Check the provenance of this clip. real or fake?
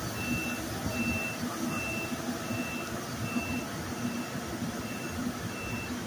real